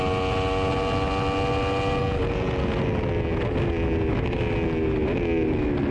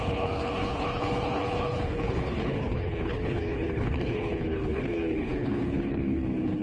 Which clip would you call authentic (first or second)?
first